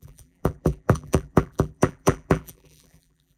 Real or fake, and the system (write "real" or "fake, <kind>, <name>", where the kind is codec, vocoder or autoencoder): fake, vocoder, BigVGAN v2